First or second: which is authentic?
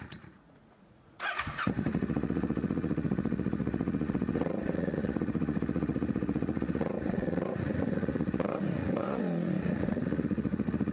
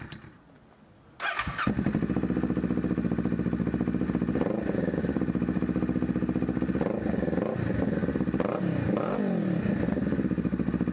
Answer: second